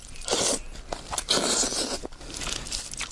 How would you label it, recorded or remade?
recorded